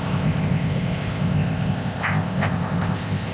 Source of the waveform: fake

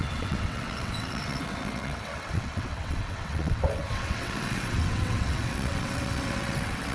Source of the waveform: fake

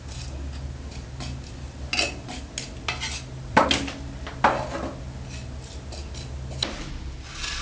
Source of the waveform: real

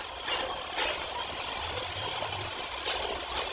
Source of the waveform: real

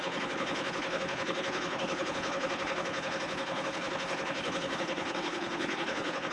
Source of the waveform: fake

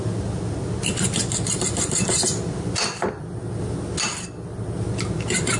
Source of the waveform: real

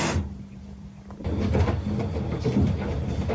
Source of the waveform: real